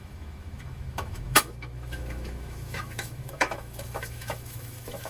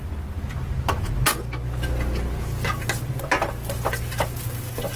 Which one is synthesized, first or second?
first